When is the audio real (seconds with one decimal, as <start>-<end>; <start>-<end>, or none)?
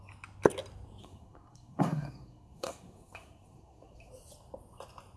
0.0-1.0; 4.1-5.2